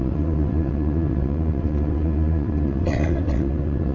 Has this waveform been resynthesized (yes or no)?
yes